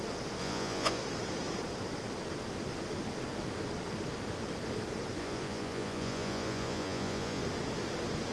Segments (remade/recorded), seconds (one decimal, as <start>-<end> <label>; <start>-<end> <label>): 0.0-0.4 recorded; 0.4-1.0 remade; 1.0-5.2 recorded; 5.2-7.4 remade; 7.4-8.3 recorded